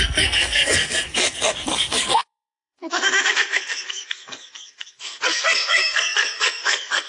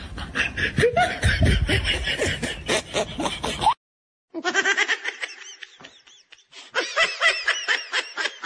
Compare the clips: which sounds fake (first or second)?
first